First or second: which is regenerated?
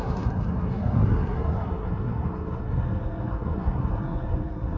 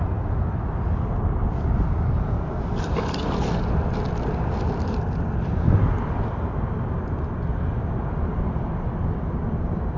first